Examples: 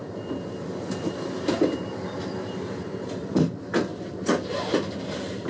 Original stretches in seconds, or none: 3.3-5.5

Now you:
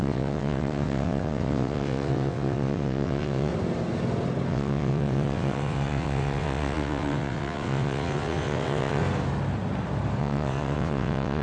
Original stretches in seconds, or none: 3.5-4.5; 9.0-10.2